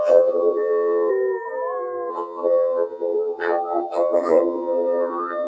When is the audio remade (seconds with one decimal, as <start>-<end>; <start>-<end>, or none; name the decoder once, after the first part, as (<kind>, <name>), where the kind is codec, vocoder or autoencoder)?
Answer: 0.0-1.1 (vocoder, HiFi-GAN); 2.1-5.5